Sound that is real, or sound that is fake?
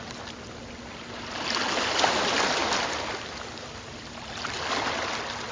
real